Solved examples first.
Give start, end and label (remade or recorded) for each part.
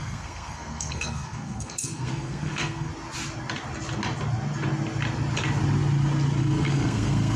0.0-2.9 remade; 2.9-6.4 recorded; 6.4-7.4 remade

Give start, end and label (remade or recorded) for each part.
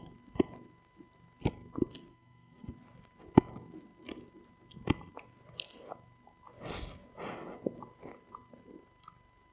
0.0-2.1 recorded; 2.1-2.7 remade; 2.7-9.5 recorded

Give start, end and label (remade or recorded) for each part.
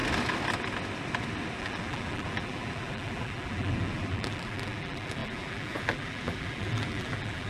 0.0-1.6 recorded; 1.6-7.5 remade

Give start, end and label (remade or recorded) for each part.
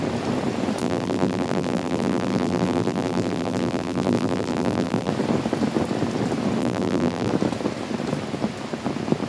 0.0-0.8 recorded; 0.8-5.1 remade; 5.1-6.6 recorded; 6.6-7.3 remade; 7.3-9.3 recorded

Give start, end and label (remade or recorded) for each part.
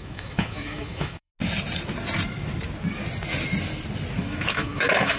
0.0-1.3 remade; 1.3-4.2 recorded; 4.2-5.2 remade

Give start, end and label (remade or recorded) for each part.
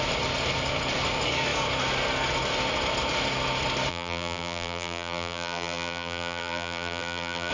0.0-3.9 recorded; 3.9-7.5 remade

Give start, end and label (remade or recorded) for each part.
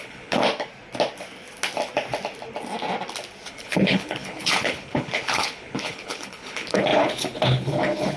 0.0-0.4 remade; 0.4-3.5 recorded; 3.5-8.2 remade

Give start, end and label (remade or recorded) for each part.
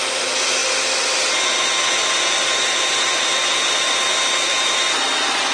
0.0-5.5 recorded